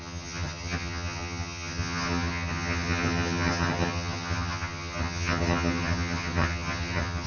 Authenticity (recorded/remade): remade